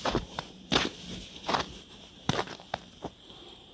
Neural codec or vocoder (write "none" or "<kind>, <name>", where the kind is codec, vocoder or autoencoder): vocoder, BigVGAN v2